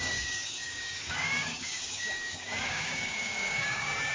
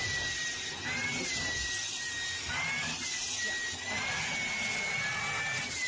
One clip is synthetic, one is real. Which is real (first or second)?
second